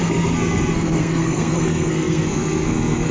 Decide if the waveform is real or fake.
fake